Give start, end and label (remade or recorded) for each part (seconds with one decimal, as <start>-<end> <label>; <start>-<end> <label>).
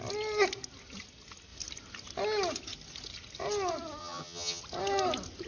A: 0.0-4.0 recorded; 4.0-4.6 remade; 4.6-5.5 recorded